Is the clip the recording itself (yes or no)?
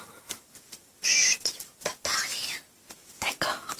yes